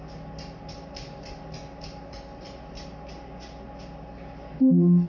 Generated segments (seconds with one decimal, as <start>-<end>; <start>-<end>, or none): none